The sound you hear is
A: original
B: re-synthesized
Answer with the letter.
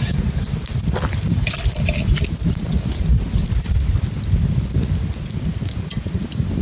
A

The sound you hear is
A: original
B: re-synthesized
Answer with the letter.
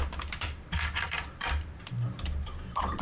B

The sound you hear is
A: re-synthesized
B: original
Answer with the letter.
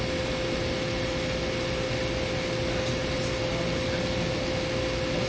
B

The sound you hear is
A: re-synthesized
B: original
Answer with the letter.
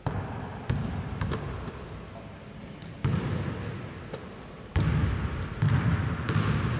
B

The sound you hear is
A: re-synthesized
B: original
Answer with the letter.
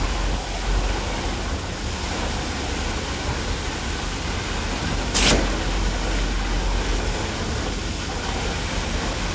B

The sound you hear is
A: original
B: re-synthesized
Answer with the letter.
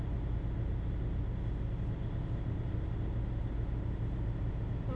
A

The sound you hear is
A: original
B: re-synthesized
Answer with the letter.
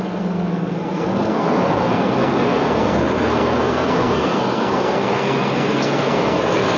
B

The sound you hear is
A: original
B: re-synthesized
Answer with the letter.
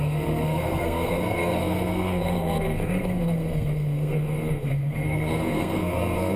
B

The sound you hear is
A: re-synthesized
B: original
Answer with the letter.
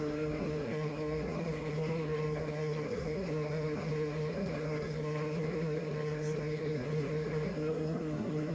A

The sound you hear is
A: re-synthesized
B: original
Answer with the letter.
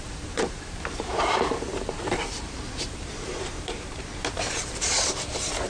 A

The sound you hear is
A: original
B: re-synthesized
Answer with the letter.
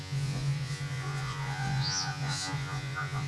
B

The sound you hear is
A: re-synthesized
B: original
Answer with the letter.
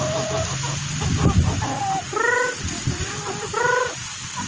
B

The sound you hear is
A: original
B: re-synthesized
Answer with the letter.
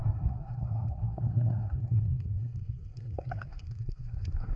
B